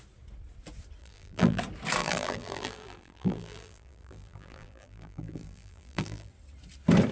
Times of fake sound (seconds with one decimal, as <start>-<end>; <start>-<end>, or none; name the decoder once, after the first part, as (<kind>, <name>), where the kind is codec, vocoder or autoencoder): 1.0-1.6 (vocoder, BigVGAN v2); 2.0-6.3